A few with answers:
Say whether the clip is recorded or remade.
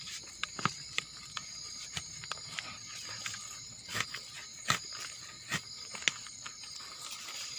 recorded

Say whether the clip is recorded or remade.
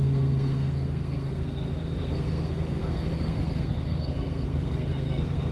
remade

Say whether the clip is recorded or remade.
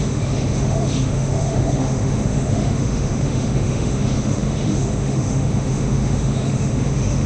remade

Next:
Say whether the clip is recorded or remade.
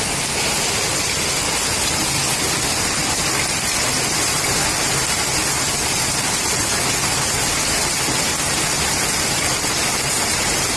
recorded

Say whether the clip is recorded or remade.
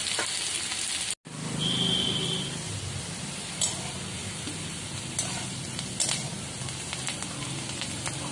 recorded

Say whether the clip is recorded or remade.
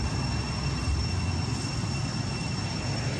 recorded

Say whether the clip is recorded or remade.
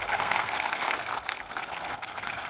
remade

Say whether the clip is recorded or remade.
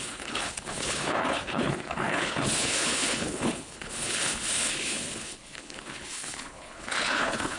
remade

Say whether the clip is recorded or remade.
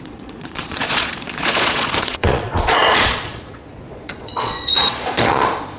remade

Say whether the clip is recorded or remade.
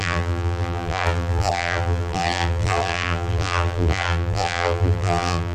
remade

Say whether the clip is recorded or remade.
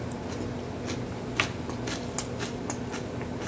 recorded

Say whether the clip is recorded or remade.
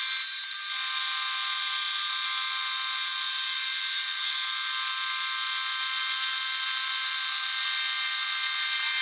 recorded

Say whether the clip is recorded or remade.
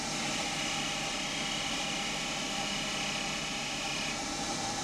recorded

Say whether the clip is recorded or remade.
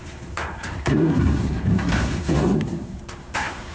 remade